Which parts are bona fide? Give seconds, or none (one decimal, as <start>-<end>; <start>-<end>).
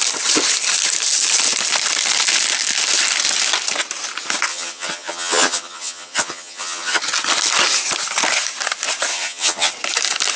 0.0-4.5; 7.0-9.1; 9.7-10.4